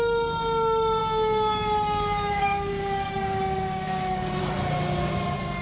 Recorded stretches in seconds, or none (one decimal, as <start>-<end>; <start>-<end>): 0.0-1.0; 4.4-5.6